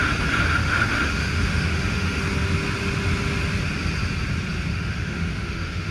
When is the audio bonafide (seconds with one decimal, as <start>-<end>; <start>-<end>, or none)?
0.0-0.6; 2.2-4.7